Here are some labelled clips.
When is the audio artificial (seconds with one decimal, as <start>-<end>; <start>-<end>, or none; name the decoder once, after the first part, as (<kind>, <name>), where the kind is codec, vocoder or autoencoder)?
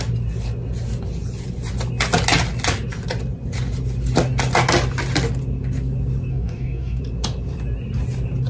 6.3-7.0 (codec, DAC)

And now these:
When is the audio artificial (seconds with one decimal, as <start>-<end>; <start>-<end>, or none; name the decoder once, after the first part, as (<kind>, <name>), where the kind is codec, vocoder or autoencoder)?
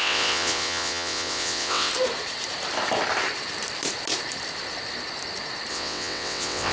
0.0-1.9 (vocoder, WaveNeXt); 5.7-6.7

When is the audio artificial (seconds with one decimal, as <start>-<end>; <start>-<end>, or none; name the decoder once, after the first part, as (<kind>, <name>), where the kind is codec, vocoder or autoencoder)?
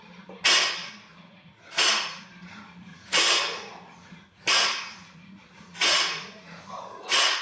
0.8-2.2 (vocoder, Vocos); 2.9-7.4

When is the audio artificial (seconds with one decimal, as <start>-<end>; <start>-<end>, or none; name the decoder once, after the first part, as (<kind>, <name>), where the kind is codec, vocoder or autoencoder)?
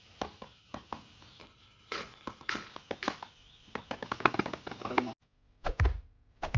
1.4-2.7 (codec, HILCodec)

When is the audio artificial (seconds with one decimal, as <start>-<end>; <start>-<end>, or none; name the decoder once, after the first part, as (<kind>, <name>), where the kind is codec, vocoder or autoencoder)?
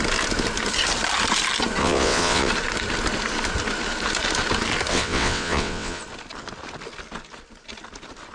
1.8-2.5 (vocoder, WaveNeXt); 4.9-6.0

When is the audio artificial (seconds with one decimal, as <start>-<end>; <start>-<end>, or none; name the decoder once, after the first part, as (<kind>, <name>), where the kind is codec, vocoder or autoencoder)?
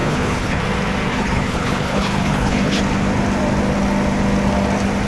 0.0-0.6 (codec, HILCodec); 1.1-2.8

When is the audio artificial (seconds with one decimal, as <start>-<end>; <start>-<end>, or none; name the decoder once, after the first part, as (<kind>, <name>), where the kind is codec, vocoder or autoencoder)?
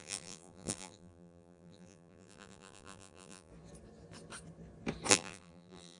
0.0-3.5 (vocoder, BigVGAN v2); 5.1-6.0